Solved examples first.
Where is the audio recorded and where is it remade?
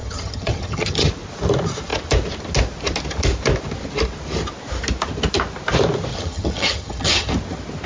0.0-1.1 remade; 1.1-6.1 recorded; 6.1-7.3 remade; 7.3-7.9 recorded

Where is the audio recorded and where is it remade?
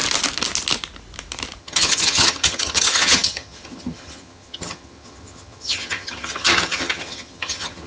0.0-1.6 recorded; 1.6-7.9 remade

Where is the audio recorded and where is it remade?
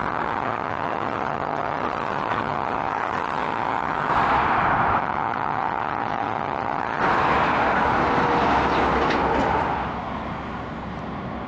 0.0-4.1 remade; 4.1-5.0 recorded; 5.0-7.0 remade; 7.0-11.5 recorded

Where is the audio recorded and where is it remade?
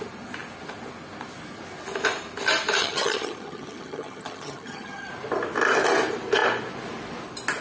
0.0-2.8 recorded; 2.8-5.1 remade; 5.1-7.6 recorded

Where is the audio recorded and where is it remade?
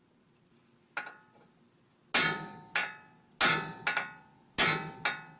0.0-5.4 recorded